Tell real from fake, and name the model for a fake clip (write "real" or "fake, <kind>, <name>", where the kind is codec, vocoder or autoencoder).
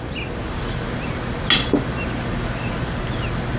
real